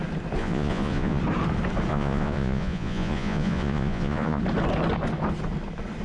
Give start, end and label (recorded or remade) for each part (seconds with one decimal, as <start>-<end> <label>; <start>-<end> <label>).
0.0-0.4 recorded; 0.4-1.2 remade; 1.2-1.9 recorded; 1.9-4.4 remade; 4.4-6.0 recorded